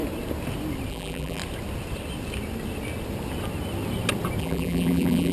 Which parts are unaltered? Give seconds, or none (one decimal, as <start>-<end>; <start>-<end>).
0.0-0.9; 1.4-4.4